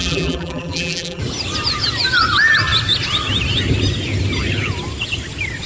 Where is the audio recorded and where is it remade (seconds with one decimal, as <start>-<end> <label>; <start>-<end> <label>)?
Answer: 0.0-1.2 remade; 1.2-5.7 recorded